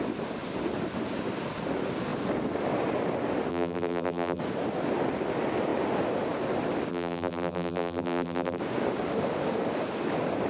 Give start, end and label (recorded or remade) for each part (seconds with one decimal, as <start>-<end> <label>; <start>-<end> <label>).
0.0-3.5 recorded; 3.5-4.4 remade; 4.4-6.9 recorded; 6.9-8.6 remade; 8.6-10.5 recorded